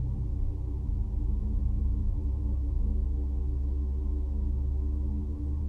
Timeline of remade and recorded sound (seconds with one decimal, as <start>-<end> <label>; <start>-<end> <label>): 0.0-2.9 remade; 2.9-5.2 recorded; 5.2-5.7 remade